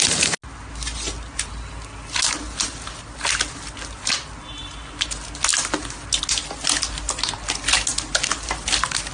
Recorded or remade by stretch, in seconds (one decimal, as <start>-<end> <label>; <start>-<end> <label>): 0.0-9.1 recorded